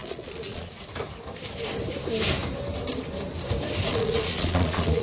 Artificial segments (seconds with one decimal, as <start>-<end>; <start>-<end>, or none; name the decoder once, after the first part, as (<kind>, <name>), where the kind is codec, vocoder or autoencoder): 0.0-0.7 (vocoder, Vocos); 3.9-5.0